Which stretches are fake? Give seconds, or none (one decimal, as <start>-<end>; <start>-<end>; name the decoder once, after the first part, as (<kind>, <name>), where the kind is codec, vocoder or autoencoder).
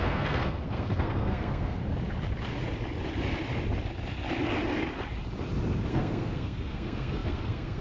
0.0-1.8 (codec, SNAC); 5.9-7.8